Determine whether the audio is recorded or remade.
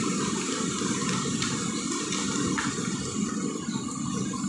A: recorded